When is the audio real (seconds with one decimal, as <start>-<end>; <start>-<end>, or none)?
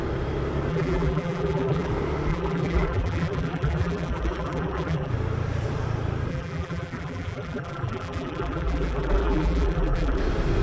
0.0-0.7; 1.9-2.3; 5.1-6.3; 10.2-10.6